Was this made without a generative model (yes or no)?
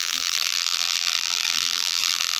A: no